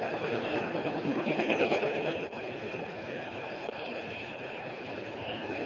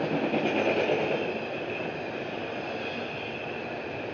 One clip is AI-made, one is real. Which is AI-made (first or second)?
first